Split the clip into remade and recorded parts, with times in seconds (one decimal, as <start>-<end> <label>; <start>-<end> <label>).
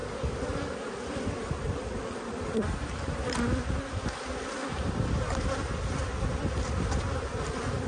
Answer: 0.0-7.9 recorded